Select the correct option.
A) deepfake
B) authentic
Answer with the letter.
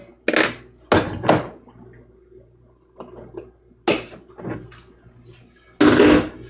B